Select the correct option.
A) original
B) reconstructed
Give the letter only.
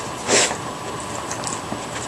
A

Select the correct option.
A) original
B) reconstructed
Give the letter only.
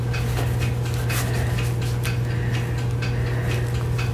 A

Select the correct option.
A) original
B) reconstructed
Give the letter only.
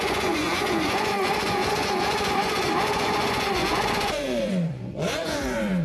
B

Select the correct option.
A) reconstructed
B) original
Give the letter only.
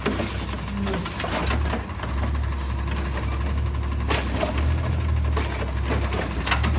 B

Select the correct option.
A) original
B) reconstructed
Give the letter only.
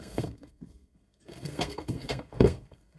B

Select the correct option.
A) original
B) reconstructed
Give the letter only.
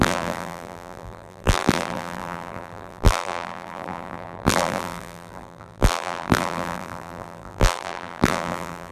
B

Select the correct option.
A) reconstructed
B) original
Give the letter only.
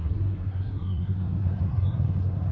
A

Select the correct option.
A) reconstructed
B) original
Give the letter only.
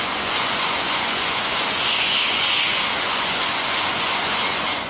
A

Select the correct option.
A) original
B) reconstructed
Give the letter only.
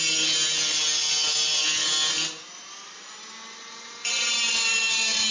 A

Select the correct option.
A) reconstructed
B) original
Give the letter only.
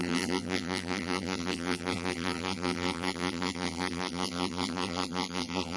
A